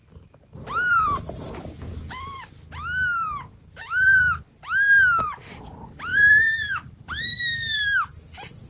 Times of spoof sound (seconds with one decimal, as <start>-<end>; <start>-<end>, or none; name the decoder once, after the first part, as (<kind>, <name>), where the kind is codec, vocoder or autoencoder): 0.0-1.5 (vocoder, BigVGAN v2); 3.5-4.4; 6.1-7.4